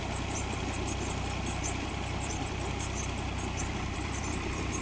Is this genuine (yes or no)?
no